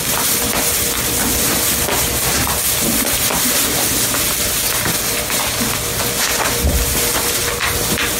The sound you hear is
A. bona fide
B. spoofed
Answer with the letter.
A